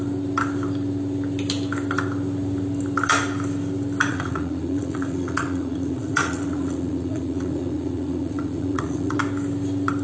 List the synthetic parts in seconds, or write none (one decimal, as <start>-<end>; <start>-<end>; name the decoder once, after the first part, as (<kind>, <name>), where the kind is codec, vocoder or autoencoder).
4.1-9.2 (vocoder, Vocos)